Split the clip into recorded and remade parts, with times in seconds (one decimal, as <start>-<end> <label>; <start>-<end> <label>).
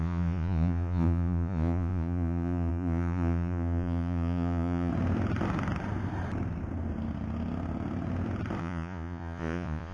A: 0.0-4.9 remade; 4.9-8.6 recorded; 8.6-9.9 remade